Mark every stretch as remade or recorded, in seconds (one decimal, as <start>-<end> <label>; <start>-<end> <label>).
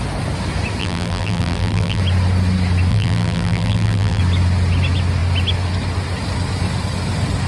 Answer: 0.0-0.8 recorded; 0.8-2.0 remade; 2.0-2.9 recorded; 2.9-4.2 remade; 4.2-7.5 recorded